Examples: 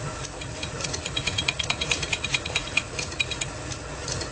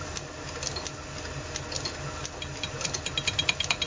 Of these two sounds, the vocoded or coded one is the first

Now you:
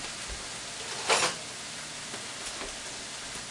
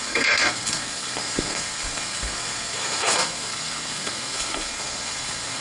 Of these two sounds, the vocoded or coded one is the second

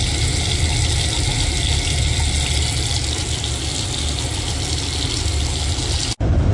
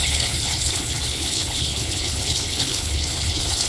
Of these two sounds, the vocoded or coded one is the second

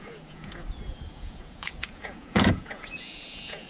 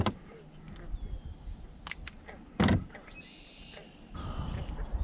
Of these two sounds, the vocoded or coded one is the first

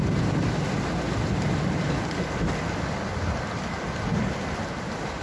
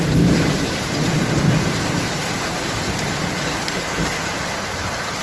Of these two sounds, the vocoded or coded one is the second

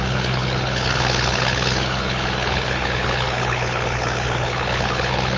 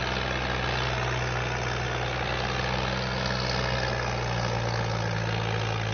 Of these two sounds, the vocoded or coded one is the first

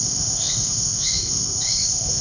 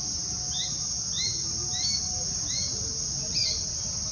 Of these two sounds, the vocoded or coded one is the first